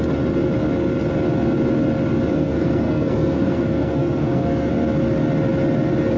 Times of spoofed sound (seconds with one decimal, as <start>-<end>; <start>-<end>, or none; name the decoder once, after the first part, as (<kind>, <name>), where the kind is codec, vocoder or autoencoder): 2.3-4.7 (codec, SNAC)